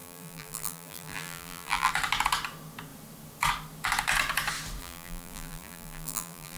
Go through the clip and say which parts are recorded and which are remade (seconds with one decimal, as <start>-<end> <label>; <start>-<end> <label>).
0.0-1.9 remade; 1.9-4.8 recorded; 4.8-6.6 remade

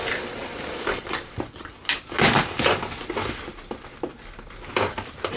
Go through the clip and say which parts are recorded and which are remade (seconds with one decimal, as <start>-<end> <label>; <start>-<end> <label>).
0.0-0.6 recorded; 0.6-1.8 remade; 1.8-5.0 recorded; 5.0-5.4 remade

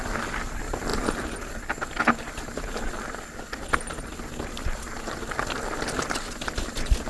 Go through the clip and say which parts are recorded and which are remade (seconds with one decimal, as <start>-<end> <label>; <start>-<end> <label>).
0.0-7.1 recorded